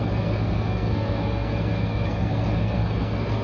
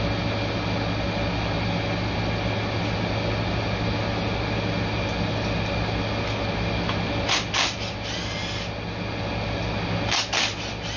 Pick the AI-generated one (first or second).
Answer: first